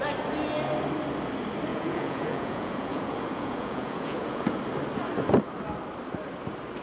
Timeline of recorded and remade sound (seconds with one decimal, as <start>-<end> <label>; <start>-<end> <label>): 0.0-1.7 recorded; 1.7-4.6 remade; 4.6-6.8 recorded